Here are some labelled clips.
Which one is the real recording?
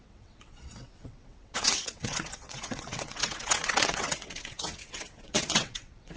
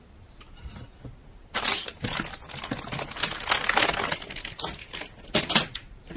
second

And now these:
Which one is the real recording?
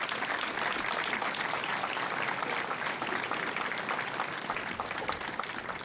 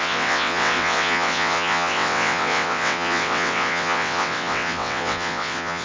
first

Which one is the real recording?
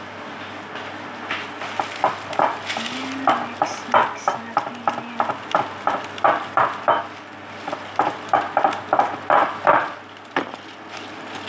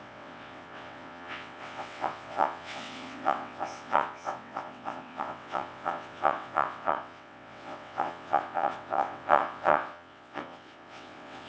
first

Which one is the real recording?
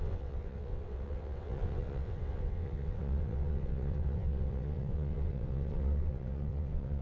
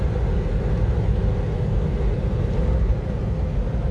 second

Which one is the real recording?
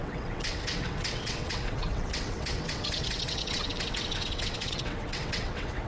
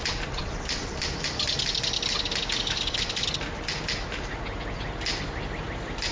second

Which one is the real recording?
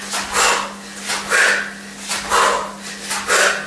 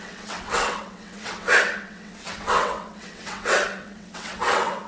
first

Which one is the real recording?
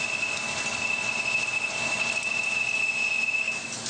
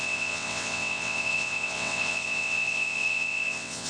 first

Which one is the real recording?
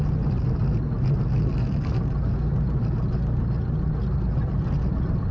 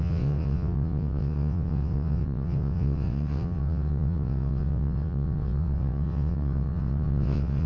first